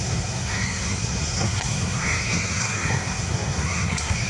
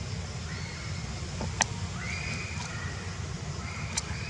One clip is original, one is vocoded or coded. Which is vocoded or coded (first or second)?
first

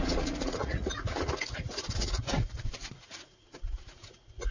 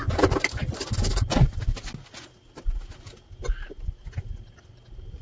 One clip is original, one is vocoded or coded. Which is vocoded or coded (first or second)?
first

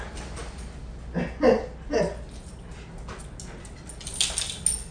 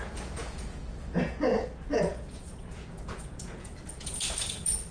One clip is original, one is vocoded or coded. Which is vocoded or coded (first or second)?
second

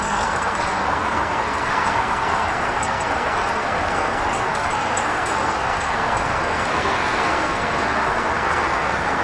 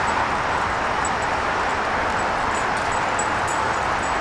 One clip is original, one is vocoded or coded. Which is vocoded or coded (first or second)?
first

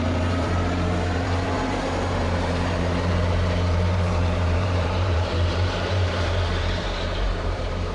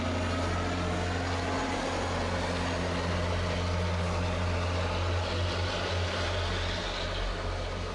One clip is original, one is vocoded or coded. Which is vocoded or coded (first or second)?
first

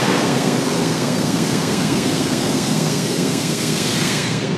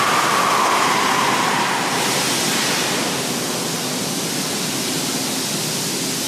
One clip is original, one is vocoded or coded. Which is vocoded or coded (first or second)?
first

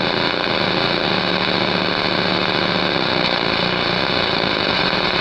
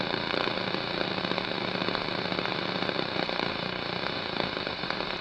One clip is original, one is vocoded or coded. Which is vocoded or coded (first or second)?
second